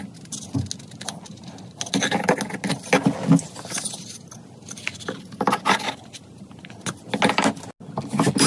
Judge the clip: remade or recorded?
recorded